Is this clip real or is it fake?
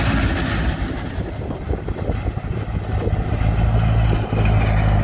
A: real